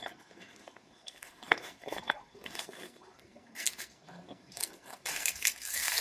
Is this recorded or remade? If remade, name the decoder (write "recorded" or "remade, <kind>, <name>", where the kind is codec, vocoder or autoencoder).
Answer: remade, codec, SNAC